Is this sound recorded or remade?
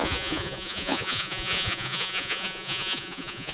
remade